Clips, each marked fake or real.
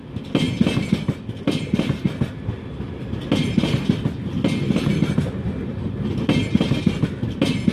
real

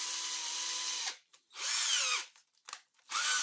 real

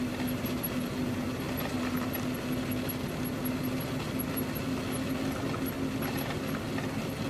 real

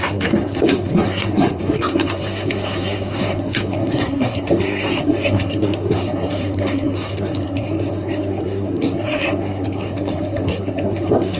fake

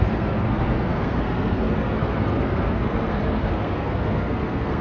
fake